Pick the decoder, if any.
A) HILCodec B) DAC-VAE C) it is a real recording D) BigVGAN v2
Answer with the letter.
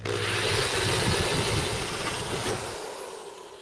C